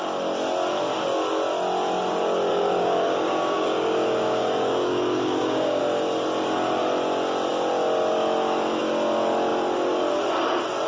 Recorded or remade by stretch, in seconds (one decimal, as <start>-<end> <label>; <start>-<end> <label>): 0.0-2.5 recorded; 2.5-5.8 remade; 5.8-10.9 recorded